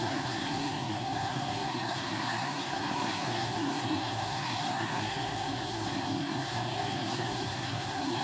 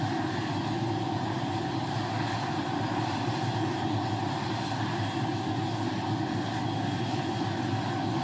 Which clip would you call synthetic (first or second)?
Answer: first